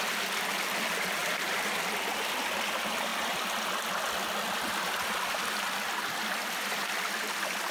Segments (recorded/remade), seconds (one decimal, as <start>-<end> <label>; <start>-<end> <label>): 0.0-1.2 recorded; 1.2-1.8 remade; 1.8-7.7 recorded